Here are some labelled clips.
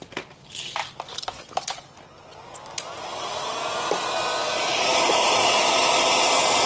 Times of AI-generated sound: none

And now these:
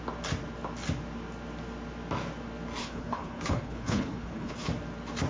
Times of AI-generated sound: 2.8-4.7 (codec, HILCodec)

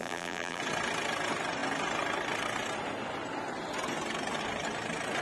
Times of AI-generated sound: 0.0-0.6 (vocoder, BigVGAN v2)

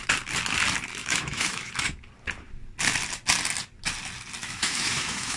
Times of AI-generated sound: 1.0-1.7 (autoencoder, DAC-VAE); 4.4-5.4